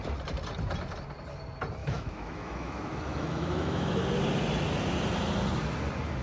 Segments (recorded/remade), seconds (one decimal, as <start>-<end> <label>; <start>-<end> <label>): 0.0-1.8 recorded; 1.8-4.0 remade; 4.0-6.2 recorded